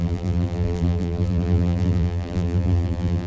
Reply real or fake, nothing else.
fake